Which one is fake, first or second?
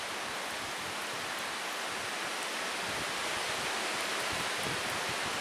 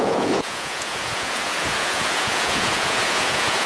second